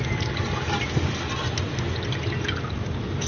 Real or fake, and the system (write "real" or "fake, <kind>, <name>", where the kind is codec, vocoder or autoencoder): real